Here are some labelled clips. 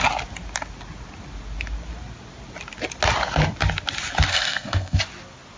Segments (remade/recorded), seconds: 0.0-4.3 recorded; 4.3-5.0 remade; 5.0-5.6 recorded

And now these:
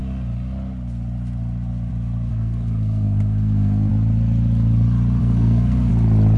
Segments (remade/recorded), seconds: 0.0-2.3 recorded; 2.3-3.9 remade; 3.9-5.2 recorded; 5.2-5.9 remade; 5.9-6.4 recorded

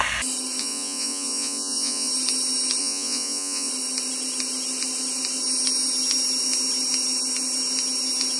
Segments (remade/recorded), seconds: 0.0-0.6 recorded; 0.6-2.1 remade; 2.1-2.8 recorded; 2.8-3.7 remade; 3.7-8.4 recorded

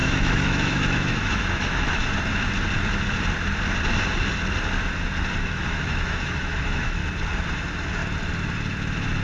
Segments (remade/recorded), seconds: 0.0-2.0 remade; 2.0-5.4 recorded; 5.4-7.0 remade; 7.0-7.5 recorded; 7.5-8.0 remade; 8.0-9.2 recorded

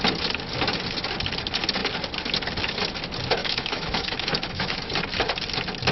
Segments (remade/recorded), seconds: 0.0-3.4 recorded; 3.4-4.9 remade; 4.9-5.9 recorded